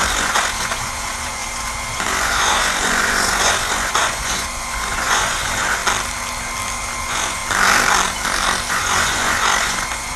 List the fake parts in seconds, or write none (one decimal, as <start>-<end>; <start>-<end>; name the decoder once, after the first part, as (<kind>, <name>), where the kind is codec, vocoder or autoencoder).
0.0-5.8 (vocoder, Vocos); 7.0-7.4; 8.7-10.2